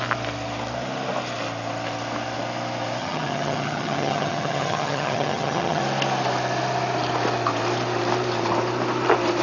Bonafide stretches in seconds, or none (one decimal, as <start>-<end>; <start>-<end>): 0.0-3.0; 5.8-9.4